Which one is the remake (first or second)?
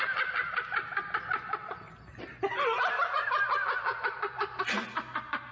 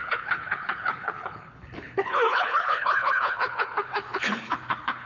second